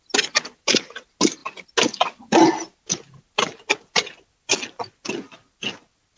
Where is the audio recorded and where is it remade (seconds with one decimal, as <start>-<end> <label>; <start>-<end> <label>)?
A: 0.0-6.2 recorded